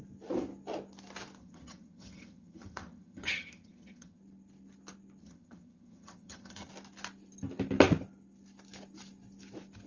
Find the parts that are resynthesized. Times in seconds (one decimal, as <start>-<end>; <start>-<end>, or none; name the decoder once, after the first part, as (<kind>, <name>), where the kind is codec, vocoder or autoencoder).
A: 1.4-4.2 (vocoder, HiFi-GAN); 5.2-6.7

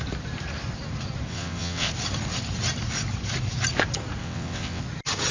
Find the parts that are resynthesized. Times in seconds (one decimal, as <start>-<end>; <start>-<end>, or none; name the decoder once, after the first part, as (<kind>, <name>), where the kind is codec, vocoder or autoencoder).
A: 1.3-1.9 (vocoder, WaveNeXt); 4.2-4.8